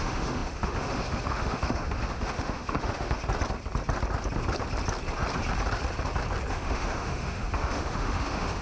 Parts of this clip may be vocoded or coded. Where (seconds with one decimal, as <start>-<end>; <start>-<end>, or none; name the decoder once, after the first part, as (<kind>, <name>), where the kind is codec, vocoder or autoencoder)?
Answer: 0.0-3.2 (autoencoder, DAC-VAE); 6.5-8.6